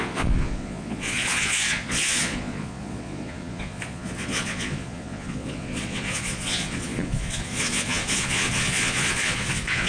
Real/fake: fake